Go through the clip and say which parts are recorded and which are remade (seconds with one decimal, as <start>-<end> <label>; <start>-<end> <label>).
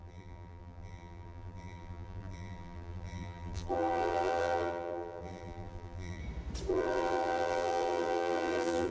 0.0-6.2 remade; 6.2-6.7 recorded; 6.7-8.9 remade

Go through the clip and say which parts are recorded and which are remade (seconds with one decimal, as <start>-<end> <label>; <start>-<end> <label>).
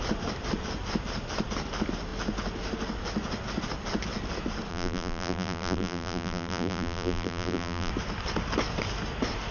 0.0-4.7 recorded; 4.7-7.9 remade; 7.9-9.5 recorded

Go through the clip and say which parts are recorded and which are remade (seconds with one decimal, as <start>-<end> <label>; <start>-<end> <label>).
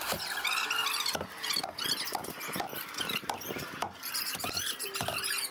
0.0-0.8 recorded; 0.8-1.7 remade; 1.7-2.1 recorded; 2.1-4.8 remade; 4.8-5.5 recorded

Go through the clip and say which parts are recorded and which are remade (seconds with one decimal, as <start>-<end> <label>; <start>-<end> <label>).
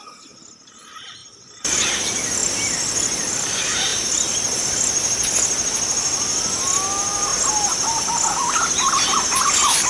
0.0-1.2 recorded; 1.2-1.9 remade; 1.9-3.9 recorded; 3.9-4.7 remade; 4.7-9.9 recorded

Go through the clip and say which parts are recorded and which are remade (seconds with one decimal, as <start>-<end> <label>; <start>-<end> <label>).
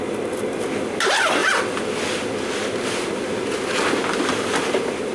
0.0-5.1 recorded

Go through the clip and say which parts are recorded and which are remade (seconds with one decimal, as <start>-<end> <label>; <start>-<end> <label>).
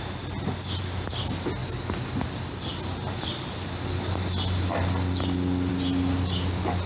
0.0-1.6 recorded; 1.6-5.7 remade; 5.7-6.9 recorded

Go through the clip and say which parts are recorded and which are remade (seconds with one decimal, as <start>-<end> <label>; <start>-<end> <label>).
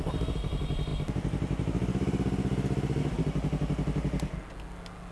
0.0-5.1 recorded